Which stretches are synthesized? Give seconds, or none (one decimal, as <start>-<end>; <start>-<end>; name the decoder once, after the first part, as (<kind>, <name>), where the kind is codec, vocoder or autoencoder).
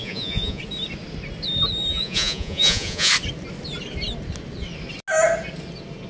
0.0-0.6 (vocoder, Vocos); 1.9-3.1